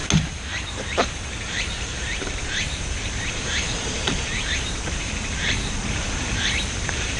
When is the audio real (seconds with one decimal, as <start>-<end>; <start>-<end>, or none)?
0.0-0.7